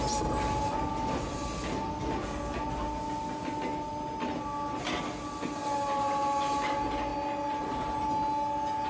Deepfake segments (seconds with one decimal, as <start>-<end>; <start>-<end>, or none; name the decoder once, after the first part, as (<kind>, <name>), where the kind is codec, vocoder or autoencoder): none